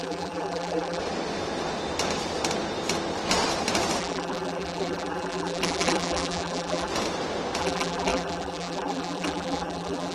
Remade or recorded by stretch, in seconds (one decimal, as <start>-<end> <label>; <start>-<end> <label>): 0.0-1.0 remade; 1.0-4.0 recorded; 4.0-6.9 remade; 6.9-7.6 recorded; 7.6-10.1 remade